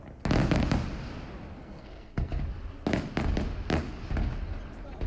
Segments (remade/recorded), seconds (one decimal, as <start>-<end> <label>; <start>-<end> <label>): 0.0-1.6 recorded; 1.6-2.3 remade; 2.3-5.1 recorded